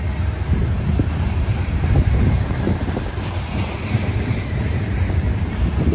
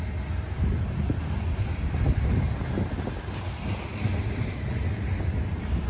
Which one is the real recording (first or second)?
second